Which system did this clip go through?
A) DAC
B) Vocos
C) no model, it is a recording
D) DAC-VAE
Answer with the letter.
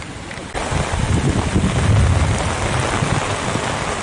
C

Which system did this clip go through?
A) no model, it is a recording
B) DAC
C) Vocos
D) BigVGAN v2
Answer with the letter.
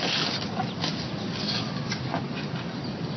A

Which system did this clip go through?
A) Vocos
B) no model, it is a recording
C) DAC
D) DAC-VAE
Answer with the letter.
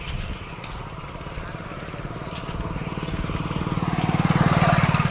B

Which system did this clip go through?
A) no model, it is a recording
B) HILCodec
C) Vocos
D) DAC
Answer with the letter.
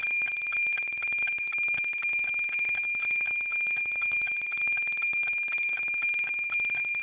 D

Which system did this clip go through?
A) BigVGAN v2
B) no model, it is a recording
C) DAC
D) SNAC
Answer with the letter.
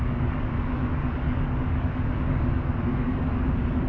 C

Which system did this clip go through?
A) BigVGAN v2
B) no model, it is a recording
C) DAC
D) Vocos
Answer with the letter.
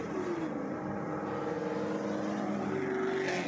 B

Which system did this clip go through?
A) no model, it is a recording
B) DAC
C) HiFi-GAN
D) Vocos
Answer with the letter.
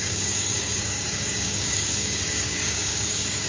B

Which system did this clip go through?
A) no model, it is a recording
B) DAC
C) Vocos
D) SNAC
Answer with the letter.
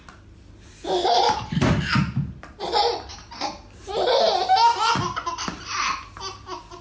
A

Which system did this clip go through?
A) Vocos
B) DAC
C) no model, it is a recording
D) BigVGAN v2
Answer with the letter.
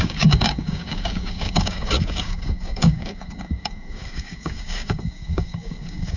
B